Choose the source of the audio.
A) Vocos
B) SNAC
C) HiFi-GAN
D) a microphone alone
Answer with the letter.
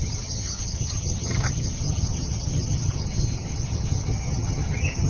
C